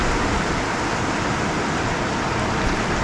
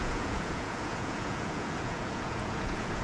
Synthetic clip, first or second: second